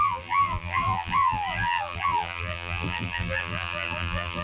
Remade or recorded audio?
remade